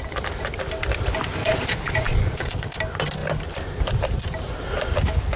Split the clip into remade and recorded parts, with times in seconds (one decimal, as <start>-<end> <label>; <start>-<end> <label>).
0.0-1.4 recorded; 1.4-2.7 remade; 2.7-5.4 recorded